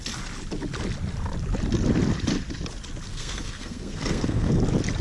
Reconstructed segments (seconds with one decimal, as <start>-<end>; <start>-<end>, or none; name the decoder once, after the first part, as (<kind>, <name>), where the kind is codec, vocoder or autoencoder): 3.1-4.6 (codec, SNAC)